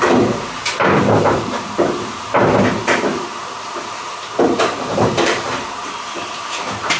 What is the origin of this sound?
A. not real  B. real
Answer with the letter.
A